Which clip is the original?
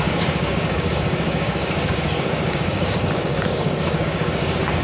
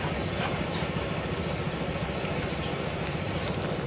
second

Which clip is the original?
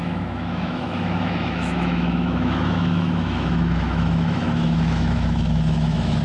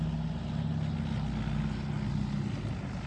second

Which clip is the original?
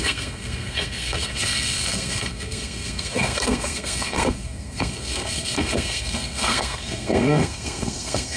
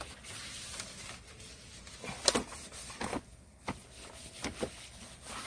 second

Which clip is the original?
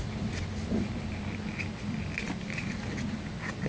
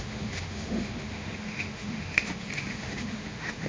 first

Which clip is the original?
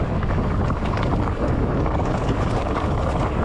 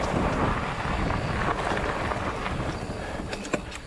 second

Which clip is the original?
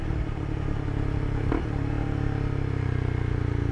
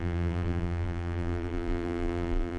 first